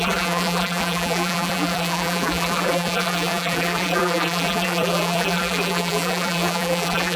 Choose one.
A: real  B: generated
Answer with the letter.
B